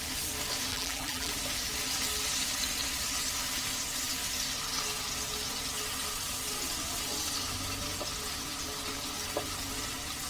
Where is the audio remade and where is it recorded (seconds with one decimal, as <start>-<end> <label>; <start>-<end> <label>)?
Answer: 0.0-0.7 recorded; 0.7-1.3 remade; 1.3-10.3 recorded